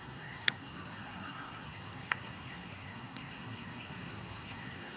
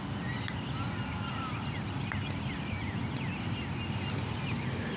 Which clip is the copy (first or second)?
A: first